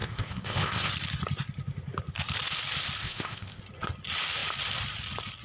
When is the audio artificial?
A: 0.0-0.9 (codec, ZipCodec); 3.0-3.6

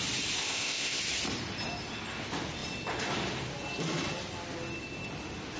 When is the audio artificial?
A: 0.4-1.0 (codec, ZipCodec)

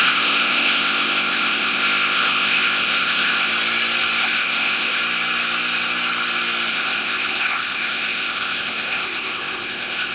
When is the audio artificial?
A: 0.0-3.5 (codec, ZipCodec); 4.2-5.0; 6.7-10.1

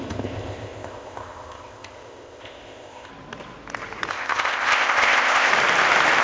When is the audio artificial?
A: 0.0-3.1 (codec, ZipCodec); 4.1-5.5

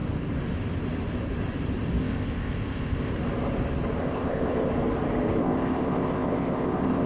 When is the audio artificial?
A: 2.0-3.1 (codec, ZipCodec); 4.0-4.7; 5.4-7.1